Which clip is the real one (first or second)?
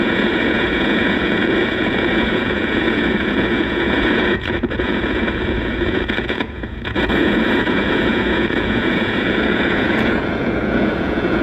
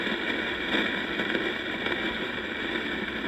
second